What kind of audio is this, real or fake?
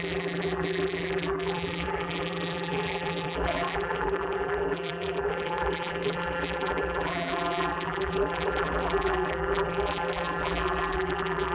fake